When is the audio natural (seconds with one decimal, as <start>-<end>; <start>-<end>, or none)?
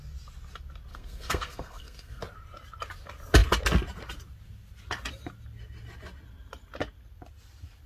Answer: 0.0-0.9; 2.2-7.9